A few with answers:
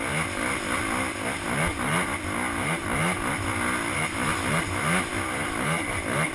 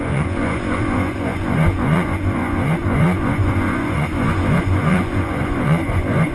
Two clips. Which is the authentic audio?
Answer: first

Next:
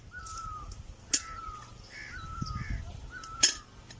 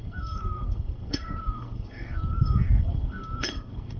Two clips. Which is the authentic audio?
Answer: first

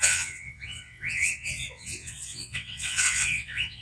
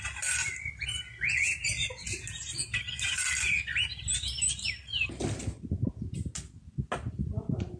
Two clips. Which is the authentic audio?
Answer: second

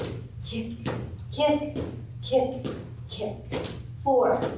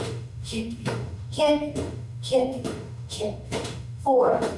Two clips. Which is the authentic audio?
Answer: first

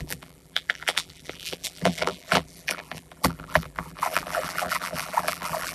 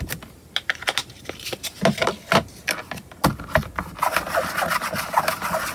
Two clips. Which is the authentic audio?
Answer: second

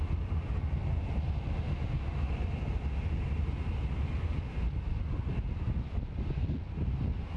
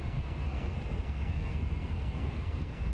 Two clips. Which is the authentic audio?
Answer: first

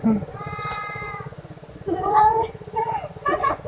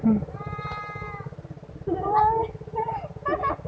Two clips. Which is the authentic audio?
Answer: second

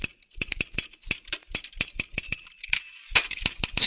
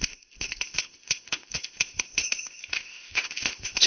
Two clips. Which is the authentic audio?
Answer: first